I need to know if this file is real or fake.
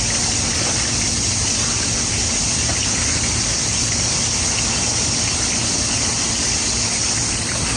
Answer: real